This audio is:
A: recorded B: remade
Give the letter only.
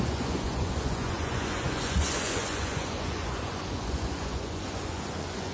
B